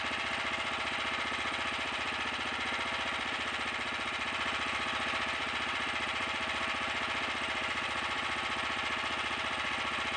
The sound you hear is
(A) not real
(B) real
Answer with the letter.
A